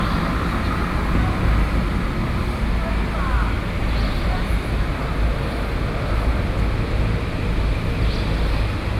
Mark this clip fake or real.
real